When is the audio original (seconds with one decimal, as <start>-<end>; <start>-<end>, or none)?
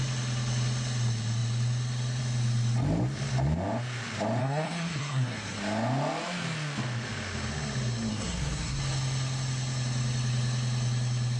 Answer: 0.0-4.4; 5.6-8.1; 8.8-11.4